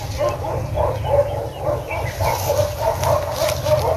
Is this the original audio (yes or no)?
yes